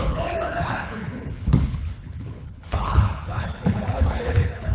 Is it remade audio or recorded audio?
remade